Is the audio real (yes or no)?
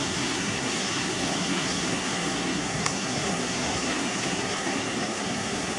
no